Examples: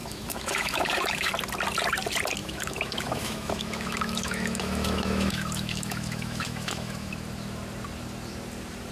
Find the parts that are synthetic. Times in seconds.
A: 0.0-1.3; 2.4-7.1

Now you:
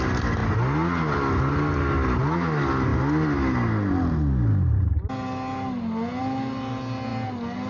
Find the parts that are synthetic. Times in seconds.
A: none

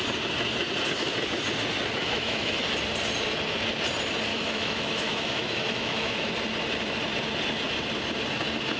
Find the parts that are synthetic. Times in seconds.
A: 2.0-2.6; 4.3-6.3